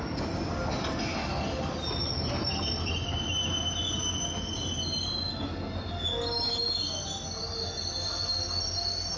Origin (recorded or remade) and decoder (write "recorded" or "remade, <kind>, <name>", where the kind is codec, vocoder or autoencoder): recorded